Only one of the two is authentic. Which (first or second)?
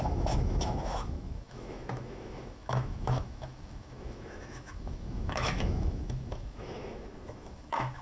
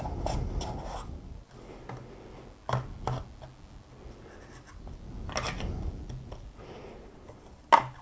second